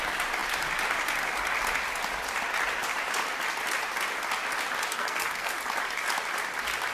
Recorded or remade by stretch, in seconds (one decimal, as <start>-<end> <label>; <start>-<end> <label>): 0.0-4.9 recorded; 4.9-5.5 remade; 5.5-6.9 recorded